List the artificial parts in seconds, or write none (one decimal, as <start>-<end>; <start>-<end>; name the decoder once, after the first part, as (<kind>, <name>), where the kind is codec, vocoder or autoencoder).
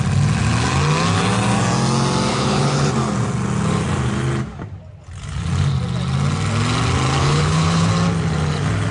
2.3-2.9 (codec, HILCodec); 7.2-7.9